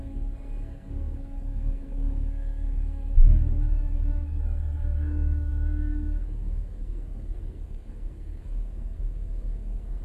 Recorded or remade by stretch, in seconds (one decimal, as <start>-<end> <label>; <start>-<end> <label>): 0.0-10.0 remade